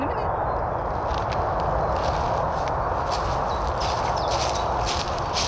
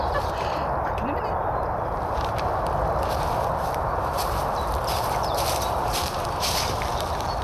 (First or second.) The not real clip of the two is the second